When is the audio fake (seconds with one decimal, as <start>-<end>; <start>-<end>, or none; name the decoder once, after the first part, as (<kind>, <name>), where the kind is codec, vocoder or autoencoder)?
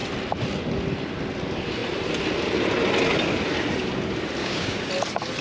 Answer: 4.4-4.9 (codec, DAC)